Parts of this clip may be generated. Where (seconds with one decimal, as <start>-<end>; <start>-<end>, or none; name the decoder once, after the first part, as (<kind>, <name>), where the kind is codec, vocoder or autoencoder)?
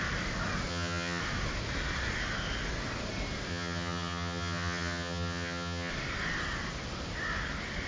0.7-1.2 (vocoder, HiFi-GAN); 3.5-5.9